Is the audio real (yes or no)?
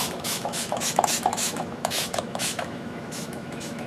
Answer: no